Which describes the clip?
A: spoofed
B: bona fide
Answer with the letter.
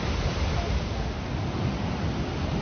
B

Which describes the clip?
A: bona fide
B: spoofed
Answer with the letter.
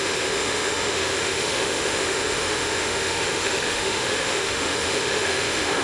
B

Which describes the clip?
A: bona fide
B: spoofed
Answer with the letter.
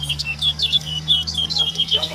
B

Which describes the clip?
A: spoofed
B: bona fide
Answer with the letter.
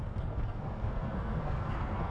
A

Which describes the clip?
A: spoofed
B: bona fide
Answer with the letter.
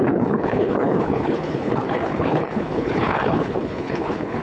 A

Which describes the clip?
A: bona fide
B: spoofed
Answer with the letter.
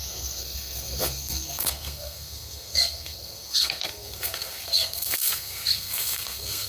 B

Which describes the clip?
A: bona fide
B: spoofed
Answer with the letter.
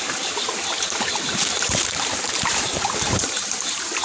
B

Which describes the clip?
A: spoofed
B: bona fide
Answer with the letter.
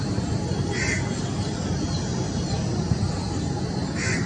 B